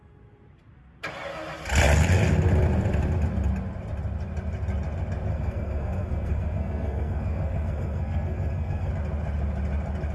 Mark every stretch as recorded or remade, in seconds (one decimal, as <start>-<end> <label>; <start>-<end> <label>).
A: 0.0-5.3 recorded; 5.3-8.9 remade; 8.9-10.1 recorded